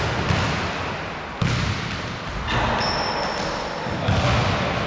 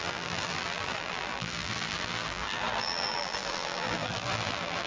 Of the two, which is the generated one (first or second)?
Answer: second